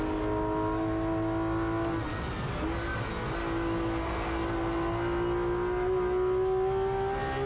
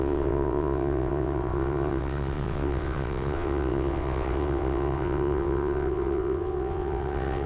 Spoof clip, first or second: second